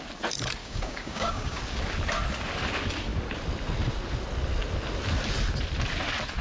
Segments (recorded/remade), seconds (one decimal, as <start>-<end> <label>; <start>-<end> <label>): 0.0-0.6 recorded; 0.6-1.6 remade; 1.6-6.4 recorded